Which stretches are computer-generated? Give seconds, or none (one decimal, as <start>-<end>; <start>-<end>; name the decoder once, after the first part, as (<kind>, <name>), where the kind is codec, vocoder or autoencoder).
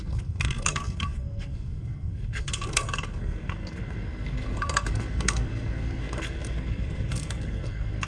0.0-8.1 (codec, SNAC)